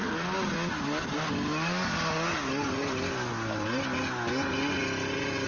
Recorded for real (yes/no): yes